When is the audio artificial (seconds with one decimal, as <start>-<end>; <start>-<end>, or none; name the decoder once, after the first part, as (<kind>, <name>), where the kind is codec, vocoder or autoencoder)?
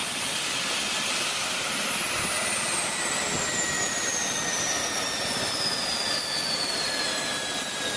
none